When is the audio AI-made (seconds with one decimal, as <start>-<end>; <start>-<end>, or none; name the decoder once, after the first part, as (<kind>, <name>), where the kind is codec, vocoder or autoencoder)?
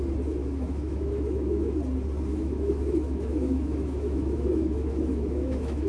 0.4-1.8 (autoencoder, DAC-VAE); 2.3-5.9